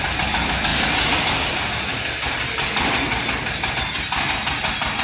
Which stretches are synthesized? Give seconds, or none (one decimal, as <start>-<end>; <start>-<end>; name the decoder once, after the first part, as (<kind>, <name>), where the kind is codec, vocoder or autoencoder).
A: none